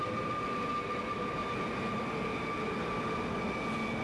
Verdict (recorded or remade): recorded